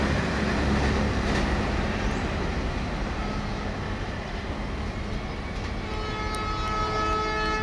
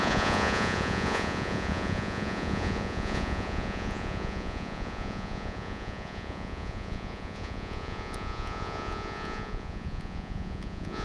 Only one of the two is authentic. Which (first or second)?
first